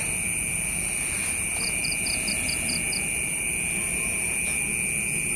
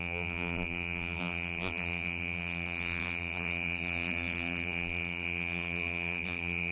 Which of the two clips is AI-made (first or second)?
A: second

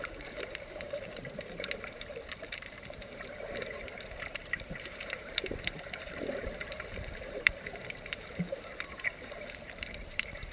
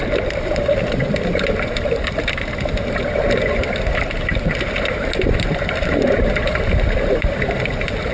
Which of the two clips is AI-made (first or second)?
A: first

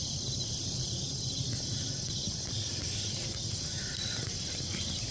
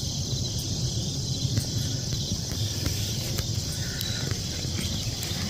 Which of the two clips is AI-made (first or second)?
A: second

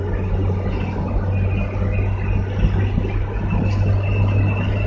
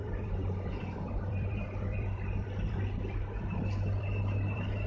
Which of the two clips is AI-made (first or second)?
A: second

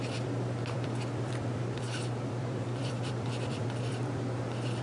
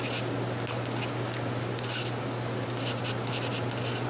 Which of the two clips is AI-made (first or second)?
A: first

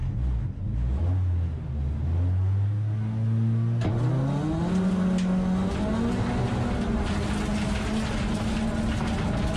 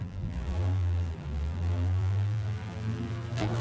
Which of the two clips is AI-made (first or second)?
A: second